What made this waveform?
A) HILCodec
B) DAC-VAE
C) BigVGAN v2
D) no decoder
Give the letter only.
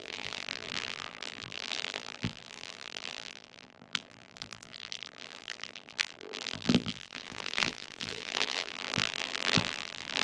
C